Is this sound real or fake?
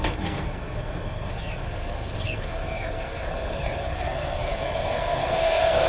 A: fake